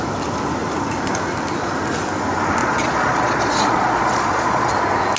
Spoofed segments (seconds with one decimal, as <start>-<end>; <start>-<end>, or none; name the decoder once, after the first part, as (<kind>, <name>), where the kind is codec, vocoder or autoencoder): 2.6-4.7 (vocoder, Vocos)